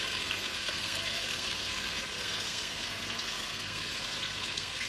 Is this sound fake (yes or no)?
yes